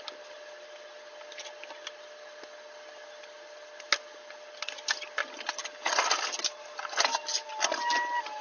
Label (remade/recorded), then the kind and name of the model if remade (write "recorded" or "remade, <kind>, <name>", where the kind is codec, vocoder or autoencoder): recorded